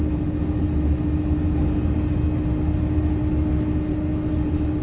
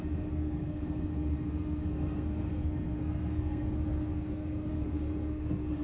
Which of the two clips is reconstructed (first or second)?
second